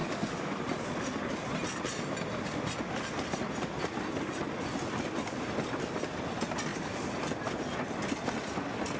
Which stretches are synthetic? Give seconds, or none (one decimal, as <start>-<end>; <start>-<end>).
0.0-0.6